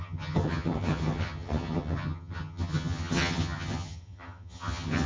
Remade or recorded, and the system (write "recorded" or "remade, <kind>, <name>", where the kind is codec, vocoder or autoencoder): remade, vocoder, HiFi-GAN